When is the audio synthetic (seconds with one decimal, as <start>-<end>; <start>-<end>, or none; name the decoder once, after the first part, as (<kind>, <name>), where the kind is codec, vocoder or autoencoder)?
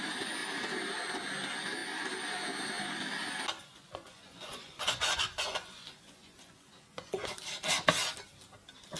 3.6-7.3 (vocoder, Vocos)